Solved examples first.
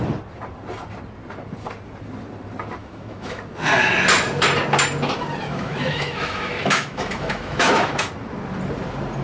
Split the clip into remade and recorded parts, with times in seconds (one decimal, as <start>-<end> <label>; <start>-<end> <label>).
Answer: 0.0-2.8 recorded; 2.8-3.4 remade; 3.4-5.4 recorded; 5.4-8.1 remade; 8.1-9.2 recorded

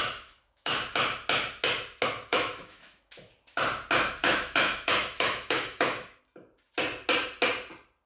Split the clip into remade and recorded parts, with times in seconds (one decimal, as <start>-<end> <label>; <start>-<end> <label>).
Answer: 0.0-0.8 remade; 0.8-2.3 recorded; 2.3-3.3 remade; 3.3-4.2 recorded; 4.2-6.2 remade; 6.2-8.1 recorded

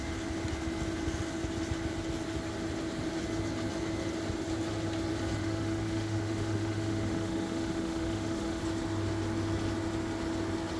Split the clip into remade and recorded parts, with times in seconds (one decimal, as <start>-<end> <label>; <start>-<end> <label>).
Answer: 0.0-5.4 recorded; 5.4-8.6 remade; 8.6-10.8 recorded

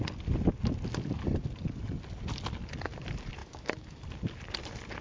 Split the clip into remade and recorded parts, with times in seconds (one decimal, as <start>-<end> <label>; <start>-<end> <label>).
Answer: 0.0-3.4 recorded; 3.4-4.0 remade; 4.0-5.0 recorded

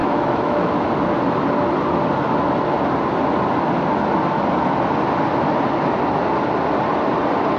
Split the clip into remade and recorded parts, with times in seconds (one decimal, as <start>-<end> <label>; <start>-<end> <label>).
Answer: 0.0-0.7 remade; 0.7-7.6 recorded

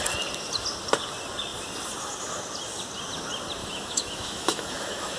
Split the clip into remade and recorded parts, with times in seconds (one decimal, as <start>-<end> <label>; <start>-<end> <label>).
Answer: 0.0-3.6 recorded; 3.6-5.2 remade